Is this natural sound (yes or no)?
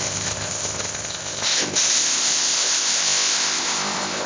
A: no